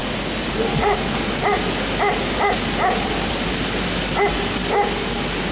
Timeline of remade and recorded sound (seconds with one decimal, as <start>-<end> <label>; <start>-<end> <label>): 0.0-5.5 recorded

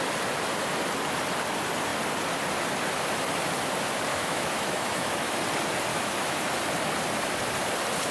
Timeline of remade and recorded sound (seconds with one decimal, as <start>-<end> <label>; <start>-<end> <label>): 0.0-4.1 recorded; 4.1-5.4 remade; 5.4-5.9 recorded; 5.9-6.5 remade; 6.5-8.1 recorded

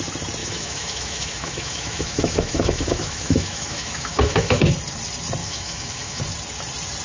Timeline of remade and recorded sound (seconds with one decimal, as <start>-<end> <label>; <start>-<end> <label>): 0.0-0.4 recorded; 0.4-4.6 remade; 4.6-5.4 recorded; 5.4-6.2 remade; 6.2-7.0 recorded

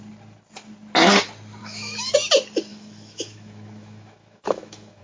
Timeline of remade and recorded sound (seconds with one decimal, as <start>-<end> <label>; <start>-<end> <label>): 0.0-1.6 recorded; 1.6-2.1 remade; 2.1-2.7 recorded; 2.7-5.0 remade

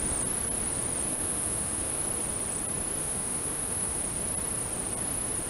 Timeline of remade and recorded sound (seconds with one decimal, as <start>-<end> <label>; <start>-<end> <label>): 0.0-1.1 recorded; 1.1-2.0 remade; 2.0-3.0 recorded; 3.0-4.0 remade; 4.0-5.5 recorded

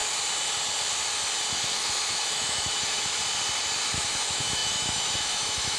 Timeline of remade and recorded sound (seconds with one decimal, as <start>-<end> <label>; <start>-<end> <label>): 0.0-1.6 recorded; 1.6-3.2 remade; 3.2-3.9 recorded; 3.9-5.8 remade

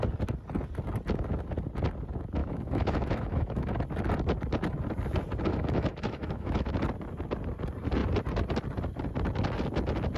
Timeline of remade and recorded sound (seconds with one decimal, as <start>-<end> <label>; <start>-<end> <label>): 0.0-2.4 recorded; 2.4-3.7 remade; 3.7-5.5 recorded; 5.5-6.7 remade; 6.7-10.2 recorded

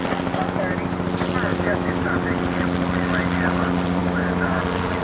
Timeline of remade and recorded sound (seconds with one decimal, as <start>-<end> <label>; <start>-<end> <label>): 0.0-1.5 recorded; 1.5-2.0 remade; 2.0-4.0 recorded; 4.0-4.6 remade; 4.6-5.0 recorded